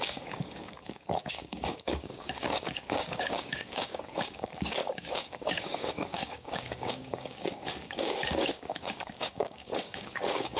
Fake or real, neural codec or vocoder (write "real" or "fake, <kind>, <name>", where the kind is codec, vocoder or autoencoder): fake, codec, DAC